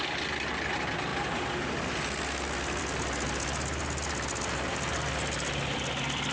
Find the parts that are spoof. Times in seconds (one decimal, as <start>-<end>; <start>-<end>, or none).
none